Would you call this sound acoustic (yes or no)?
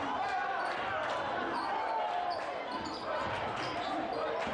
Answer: yes